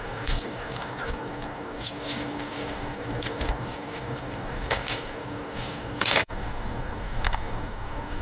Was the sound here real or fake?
fake